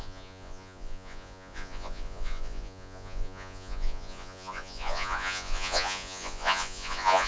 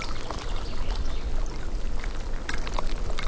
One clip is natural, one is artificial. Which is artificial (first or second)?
first